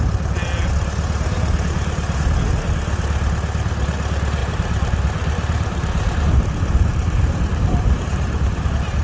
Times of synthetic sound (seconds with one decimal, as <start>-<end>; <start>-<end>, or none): 4.4-8.6